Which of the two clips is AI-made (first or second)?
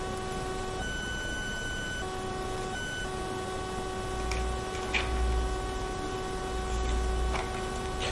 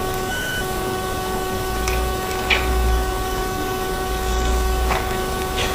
second